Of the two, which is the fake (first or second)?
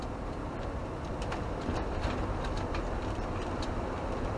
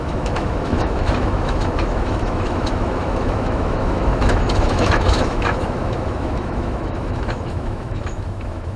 second